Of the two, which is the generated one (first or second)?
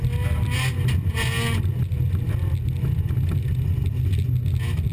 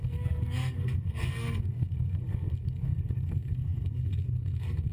second